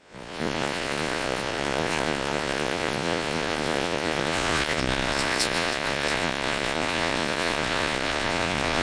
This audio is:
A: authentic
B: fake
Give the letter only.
B